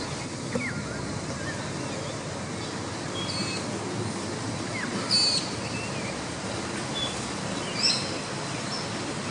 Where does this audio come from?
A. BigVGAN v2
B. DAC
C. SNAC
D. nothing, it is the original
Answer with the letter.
D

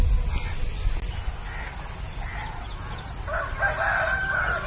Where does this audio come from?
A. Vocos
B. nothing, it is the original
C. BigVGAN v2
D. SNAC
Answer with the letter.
B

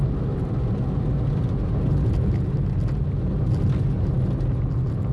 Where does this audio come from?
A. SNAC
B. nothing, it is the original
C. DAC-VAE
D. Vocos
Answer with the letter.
B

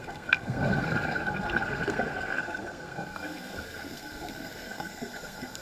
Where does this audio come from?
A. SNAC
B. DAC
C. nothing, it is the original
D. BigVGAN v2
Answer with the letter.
A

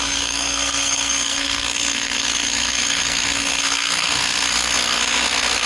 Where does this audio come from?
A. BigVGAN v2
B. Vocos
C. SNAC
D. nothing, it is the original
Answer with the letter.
C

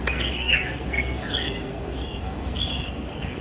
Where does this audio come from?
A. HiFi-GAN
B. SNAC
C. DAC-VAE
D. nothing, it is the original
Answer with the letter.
B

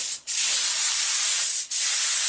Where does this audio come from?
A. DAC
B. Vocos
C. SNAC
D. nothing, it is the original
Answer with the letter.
D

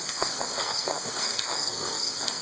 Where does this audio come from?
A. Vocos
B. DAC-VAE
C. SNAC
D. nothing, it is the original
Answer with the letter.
C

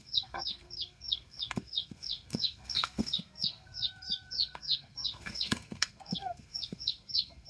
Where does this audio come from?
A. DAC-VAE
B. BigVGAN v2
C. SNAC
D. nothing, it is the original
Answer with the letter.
C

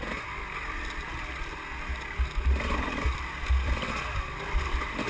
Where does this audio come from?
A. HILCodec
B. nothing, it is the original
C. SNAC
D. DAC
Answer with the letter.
B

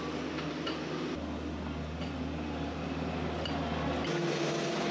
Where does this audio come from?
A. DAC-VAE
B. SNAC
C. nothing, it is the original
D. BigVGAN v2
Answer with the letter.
C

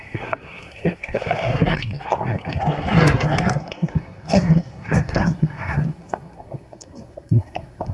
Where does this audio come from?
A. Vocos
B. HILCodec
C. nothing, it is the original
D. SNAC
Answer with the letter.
D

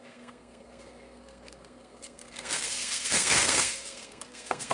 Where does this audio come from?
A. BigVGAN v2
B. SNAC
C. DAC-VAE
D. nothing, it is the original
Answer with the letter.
B